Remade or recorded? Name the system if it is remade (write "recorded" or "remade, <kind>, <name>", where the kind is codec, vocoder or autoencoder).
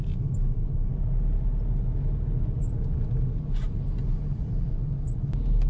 recorded